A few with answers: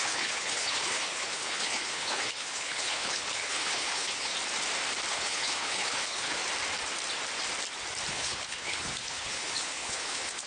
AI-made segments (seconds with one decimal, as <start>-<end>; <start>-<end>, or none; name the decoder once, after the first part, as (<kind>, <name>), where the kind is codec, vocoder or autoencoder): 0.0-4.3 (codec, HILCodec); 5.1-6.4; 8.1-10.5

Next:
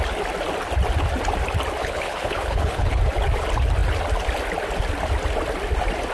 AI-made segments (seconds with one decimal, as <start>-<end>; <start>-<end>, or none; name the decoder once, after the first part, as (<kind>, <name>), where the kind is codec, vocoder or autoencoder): 1.8-3.0 (codec, HILCodec)

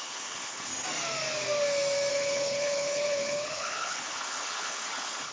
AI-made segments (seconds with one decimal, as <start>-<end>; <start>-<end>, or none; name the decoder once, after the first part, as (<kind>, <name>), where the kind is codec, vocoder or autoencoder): 0.0-0.7 (codec, HILCodec); 2.1-5.3

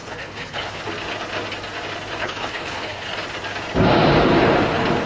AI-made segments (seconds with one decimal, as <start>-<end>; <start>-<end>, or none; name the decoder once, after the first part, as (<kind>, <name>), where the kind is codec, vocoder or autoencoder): 0.0-0.8 (codec, HILCodec); 2.2-3.1

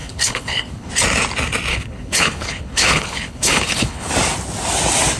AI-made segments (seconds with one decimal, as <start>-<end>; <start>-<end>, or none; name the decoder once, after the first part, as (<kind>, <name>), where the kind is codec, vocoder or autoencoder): 0.0-0.9 (codec, HILCodec); 1.7-4.1

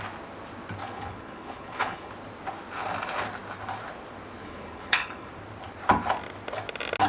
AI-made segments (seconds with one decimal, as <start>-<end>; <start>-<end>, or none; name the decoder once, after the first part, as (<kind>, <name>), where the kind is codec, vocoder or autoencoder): 0.8-2.1 (codec, HILCodec); 4.4-5.3

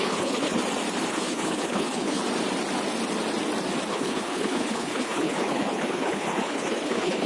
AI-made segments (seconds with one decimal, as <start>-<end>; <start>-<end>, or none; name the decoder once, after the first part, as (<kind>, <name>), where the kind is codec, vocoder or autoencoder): 0.0-0.6 (codec, HILCodec); 1.1-2.2; 3.9-7.3